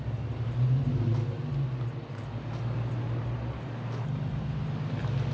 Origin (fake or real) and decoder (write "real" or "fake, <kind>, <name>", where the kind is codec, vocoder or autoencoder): real